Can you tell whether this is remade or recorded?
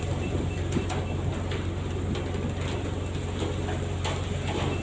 recorded